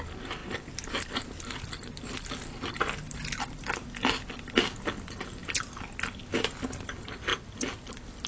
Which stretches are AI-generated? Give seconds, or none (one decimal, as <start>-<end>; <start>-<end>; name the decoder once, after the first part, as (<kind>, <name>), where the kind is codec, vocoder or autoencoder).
none